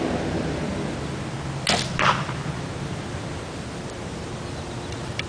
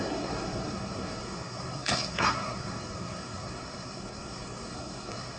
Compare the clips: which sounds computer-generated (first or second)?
second